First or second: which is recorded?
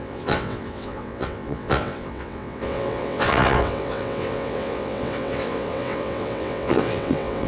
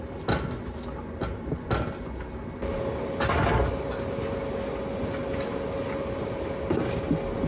second